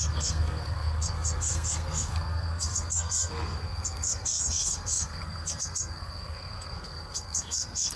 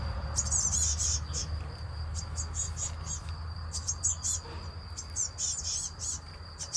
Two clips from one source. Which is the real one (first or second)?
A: second